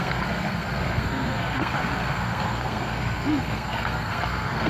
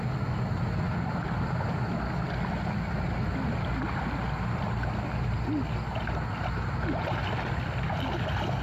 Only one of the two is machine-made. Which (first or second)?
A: first